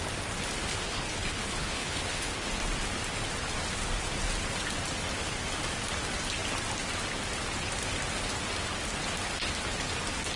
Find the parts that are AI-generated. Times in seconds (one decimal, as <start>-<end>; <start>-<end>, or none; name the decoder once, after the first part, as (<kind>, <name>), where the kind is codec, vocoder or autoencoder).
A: 0.6-2.5 (codec, HILCodec)